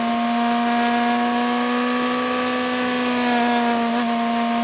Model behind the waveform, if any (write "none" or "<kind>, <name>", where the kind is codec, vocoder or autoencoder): none